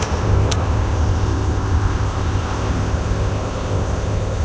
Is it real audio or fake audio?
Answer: fake